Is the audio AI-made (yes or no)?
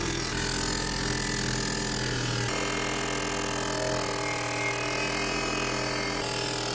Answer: no